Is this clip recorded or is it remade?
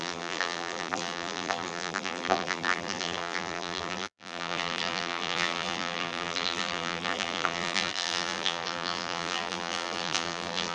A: remade